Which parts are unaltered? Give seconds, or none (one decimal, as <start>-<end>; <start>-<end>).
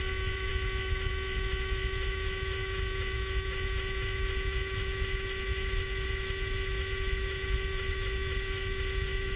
0.0-9.4